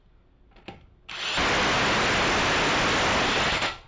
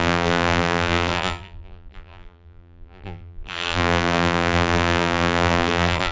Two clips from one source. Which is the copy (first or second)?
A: second